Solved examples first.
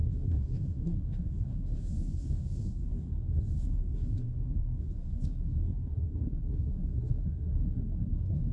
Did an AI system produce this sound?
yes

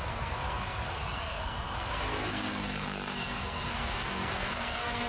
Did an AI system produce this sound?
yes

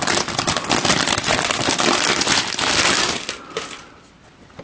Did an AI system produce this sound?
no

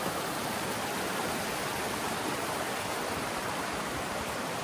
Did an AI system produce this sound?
yes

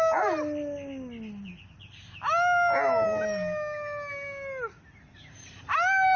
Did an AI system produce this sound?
no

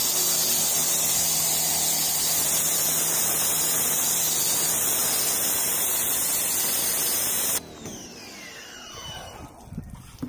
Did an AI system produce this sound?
no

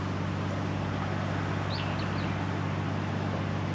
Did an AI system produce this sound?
no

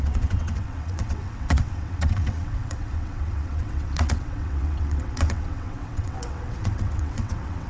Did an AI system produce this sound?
yes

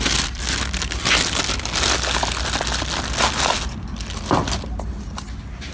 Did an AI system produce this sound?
no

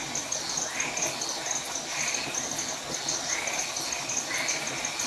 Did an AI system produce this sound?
no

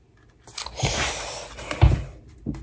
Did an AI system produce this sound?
no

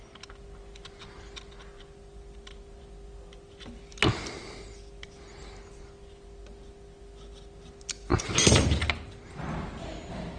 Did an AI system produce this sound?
no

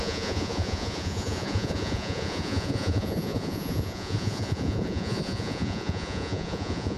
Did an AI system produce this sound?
yes